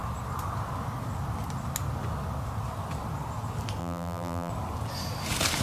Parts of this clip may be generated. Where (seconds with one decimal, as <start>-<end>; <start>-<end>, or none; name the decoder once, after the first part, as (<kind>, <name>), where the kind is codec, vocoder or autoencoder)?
3.8-4.5 (vocoder, BigVGAN v2)